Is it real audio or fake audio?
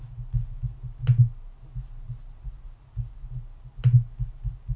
real